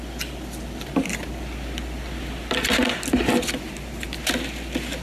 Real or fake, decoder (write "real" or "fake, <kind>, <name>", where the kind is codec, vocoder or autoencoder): real